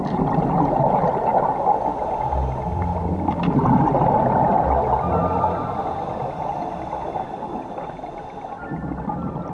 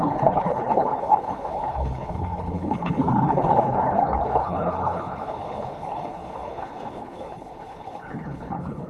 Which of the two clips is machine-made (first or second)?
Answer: second